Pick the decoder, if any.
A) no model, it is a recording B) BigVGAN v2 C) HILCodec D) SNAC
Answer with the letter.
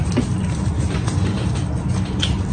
A